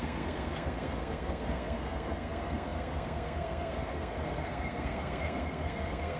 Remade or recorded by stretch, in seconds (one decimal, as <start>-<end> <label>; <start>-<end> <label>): 0.0-6.2 remade